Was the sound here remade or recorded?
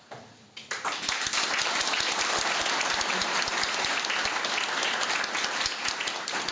recorded